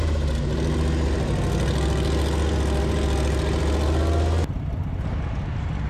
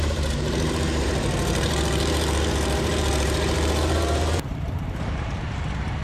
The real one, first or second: first